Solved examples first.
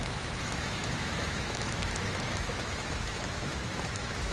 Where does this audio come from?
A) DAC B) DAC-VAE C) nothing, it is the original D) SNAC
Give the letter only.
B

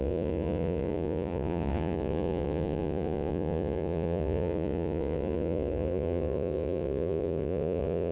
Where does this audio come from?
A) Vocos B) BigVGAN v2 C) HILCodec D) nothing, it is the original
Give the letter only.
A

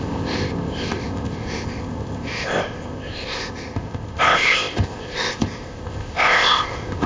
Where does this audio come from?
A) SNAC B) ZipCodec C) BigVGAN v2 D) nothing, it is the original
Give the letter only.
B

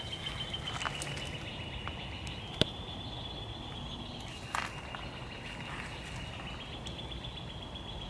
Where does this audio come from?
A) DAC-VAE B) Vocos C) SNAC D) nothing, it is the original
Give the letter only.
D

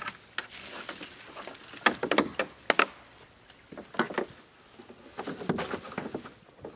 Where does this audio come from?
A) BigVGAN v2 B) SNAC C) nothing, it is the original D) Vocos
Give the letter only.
C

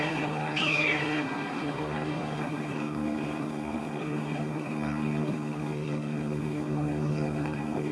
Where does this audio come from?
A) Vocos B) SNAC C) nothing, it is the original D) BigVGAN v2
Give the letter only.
B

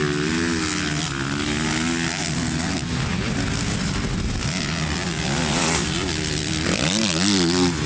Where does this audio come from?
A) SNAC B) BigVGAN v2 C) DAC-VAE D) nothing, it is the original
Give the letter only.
D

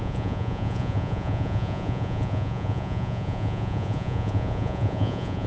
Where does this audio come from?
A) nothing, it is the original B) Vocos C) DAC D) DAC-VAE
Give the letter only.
B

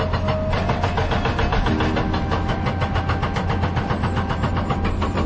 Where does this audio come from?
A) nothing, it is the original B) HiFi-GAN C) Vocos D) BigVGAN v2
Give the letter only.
A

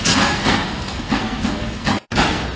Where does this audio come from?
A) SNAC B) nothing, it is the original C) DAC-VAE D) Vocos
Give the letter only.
A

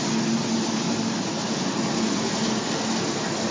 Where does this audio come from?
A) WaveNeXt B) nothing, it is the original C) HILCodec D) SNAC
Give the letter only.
B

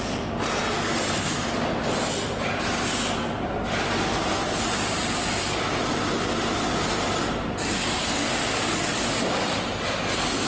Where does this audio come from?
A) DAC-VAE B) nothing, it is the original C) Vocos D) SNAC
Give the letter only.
B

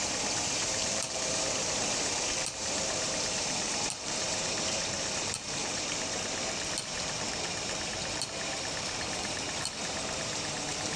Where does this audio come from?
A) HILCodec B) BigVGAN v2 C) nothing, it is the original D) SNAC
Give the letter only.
B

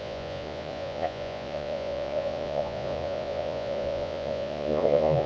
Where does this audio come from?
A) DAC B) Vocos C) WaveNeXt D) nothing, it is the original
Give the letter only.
B